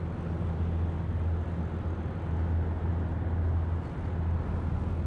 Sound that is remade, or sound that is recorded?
recorded